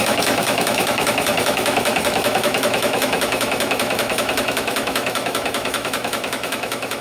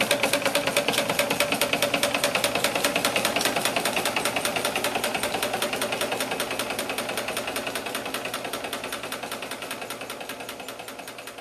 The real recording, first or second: second